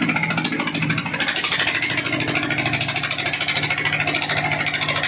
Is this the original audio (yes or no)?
yes